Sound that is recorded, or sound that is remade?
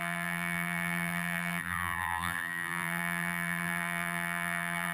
remade